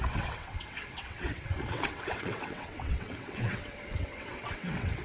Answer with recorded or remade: remade